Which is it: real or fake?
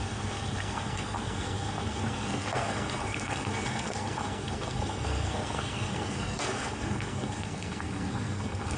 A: fake